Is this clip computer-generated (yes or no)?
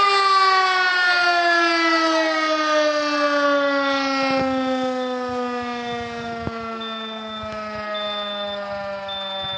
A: no